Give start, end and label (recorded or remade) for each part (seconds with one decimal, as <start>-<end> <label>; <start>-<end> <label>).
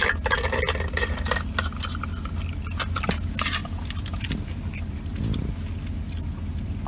0.0-3.6 recorded; 3.6-5.0 remade; 5.0-6.9 recorded